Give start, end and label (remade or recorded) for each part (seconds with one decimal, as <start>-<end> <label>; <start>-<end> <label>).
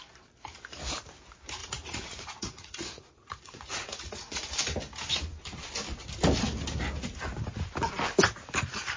0.0-1.6 recorded; 1.6-4.5 remade; 4.5-9.0 recorded